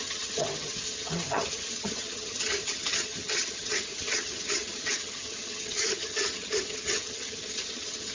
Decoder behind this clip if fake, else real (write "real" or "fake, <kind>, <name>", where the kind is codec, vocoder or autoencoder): fake, vocoder, HiFi-GAN